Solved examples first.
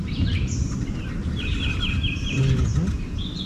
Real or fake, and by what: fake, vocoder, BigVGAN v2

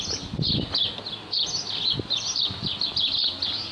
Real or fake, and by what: real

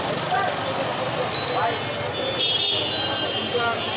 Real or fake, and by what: real